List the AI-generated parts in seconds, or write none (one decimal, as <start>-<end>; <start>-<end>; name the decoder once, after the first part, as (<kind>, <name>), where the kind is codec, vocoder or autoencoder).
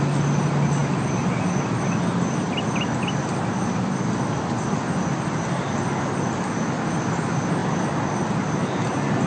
none